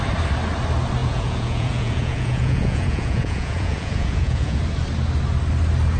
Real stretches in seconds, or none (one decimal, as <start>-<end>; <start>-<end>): 0.0-1.0; 4.6-6.0